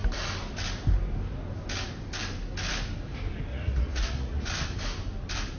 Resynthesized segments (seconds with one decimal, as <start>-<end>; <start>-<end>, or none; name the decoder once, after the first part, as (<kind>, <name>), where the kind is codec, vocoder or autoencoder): 3.5-4.5 (vocoder, Vocos)